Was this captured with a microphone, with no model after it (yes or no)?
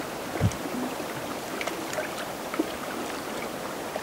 no